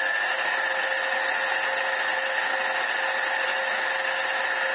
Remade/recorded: recorded